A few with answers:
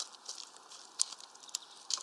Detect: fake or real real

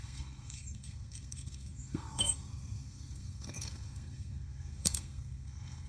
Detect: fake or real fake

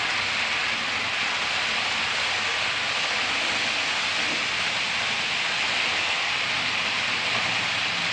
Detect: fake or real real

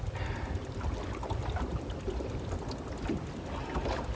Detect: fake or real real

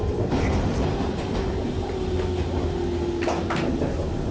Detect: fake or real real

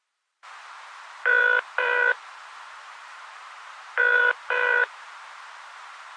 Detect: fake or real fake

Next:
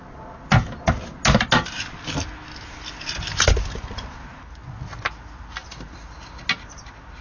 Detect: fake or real real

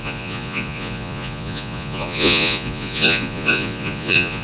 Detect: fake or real fake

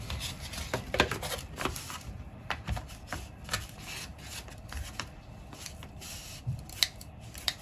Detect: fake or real fake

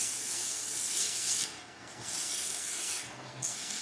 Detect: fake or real fake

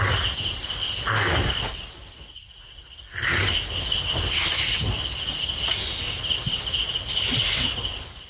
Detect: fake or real real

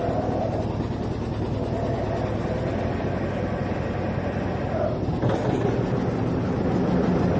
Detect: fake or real real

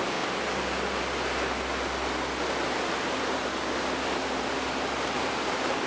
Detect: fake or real real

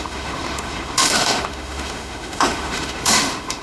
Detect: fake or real fake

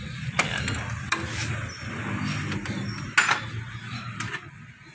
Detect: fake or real real